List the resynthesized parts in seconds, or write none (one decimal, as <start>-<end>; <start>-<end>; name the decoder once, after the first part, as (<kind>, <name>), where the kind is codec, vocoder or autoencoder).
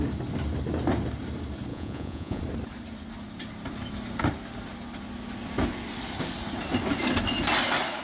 1.7-2.4 (vocoder, Vocos)